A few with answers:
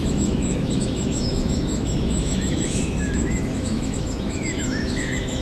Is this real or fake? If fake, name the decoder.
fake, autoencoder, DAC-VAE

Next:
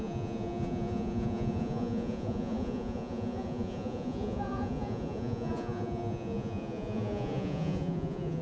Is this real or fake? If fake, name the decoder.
fake, vocoder, Vocos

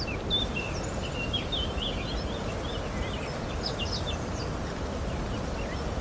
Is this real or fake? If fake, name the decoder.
real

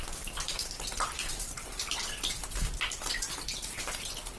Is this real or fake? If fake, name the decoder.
real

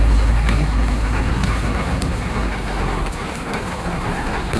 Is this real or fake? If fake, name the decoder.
fake, codec, SNAC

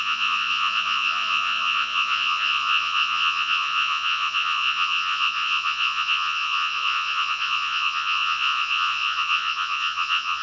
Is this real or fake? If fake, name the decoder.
fake, vocoder, Vocos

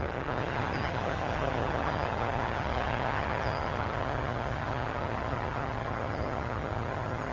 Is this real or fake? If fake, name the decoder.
fake, vocoder, HiFi-GAN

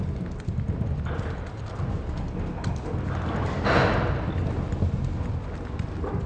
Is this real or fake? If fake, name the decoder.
real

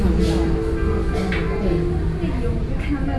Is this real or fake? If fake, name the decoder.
real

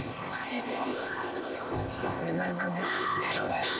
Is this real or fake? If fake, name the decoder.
fake, codec, ZipCodec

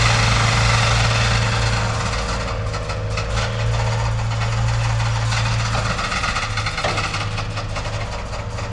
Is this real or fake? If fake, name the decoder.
real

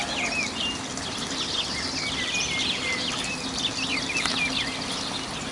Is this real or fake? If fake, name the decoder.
real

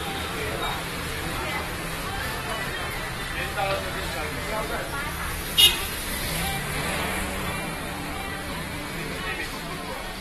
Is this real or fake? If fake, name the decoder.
real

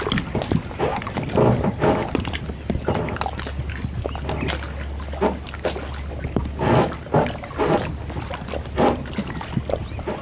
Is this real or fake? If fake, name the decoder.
real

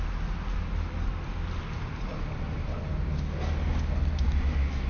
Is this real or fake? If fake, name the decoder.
real